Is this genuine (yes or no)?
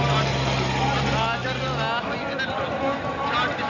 yes